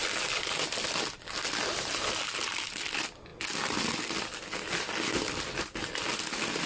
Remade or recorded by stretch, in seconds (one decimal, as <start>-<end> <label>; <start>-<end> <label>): 0.0-6.7 recorded